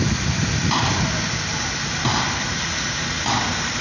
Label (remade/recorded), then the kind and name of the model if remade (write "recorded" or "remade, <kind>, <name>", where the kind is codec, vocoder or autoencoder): recorded